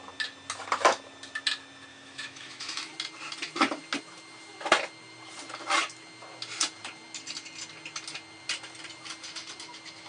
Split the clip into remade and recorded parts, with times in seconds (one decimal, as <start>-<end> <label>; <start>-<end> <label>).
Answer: 0.0-1.9 recorded; 1.9-2.9 remade; 2.9-10.1 recorded